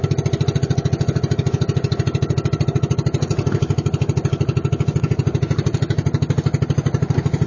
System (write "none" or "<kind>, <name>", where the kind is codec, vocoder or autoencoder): none